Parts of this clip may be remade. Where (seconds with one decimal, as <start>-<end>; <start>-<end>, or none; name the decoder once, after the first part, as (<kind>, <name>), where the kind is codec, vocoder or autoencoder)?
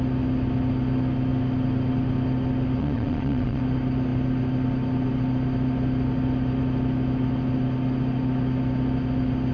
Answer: 2.8-3.6 (vocoder, Vocos)